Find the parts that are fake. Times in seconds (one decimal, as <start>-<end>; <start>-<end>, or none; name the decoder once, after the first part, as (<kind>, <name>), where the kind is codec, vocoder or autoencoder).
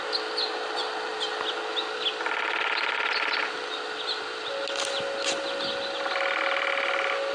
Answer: none